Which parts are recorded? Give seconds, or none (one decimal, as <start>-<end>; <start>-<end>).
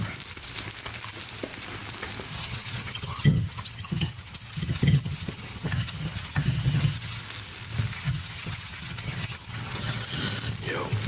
0.0-2.3; 7.2-7.9; 10.2-11.1